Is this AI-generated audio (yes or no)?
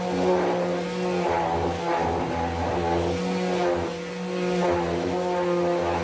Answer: no